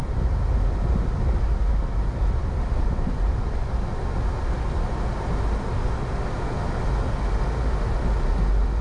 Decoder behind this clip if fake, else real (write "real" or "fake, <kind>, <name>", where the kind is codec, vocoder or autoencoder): real